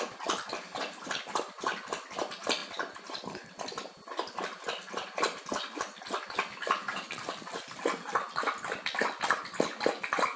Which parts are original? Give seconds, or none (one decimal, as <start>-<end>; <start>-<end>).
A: 0.0-10.4